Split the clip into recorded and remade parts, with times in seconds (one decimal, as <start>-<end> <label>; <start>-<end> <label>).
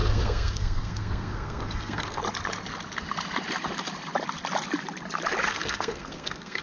0.0-2.2 remade; 2.2-5.5 recorded; 5.5-6.6 remade